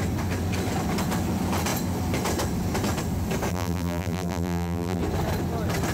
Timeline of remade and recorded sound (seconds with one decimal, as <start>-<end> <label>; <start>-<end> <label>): 0.0-3.5 recorded; 3.5-5.0 remade; 5.0-5.9 recorded